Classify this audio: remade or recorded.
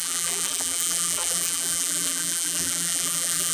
remade